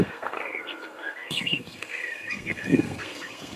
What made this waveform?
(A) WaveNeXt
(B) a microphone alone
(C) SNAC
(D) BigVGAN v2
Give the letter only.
C